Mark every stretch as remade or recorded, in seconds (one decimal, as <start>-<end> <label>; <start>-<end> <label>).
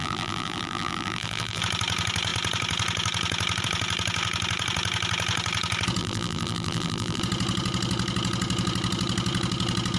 0.0-1.6 remade; 1.6-6.0 recorded; 6.0-7.2 remade; 7.2-10.0 recorded